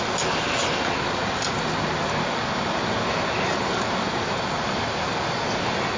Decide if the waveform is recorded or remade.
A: recorded